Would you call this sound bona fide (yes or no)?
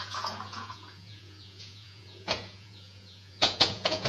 no